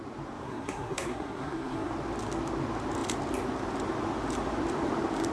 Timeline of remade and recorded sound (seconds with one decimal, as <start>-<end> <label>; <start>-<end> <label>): 0.0-0.4 recorded; 0.4-1.9 remade; 1.9-5.3 recorded